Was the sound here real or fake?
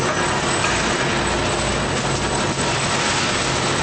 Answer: real